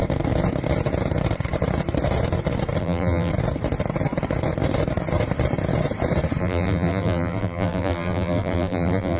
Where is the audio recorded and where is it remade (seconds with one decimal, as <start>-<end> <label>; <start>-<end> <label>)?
0.0-2.8 recorded; 2.8-3.3 remade; 3.3-6.4 recorded; 6.4-9.2 remade